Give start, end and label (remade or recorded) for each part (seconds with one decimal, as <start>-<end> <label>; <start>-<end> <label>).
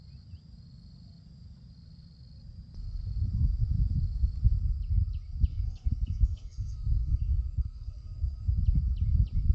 0.0-5.5 recorded; 5.5-8.6 remade; 8.6-9.5 recorded